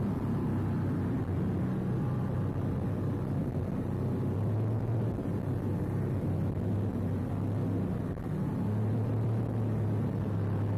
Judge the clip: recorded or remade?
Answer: recorded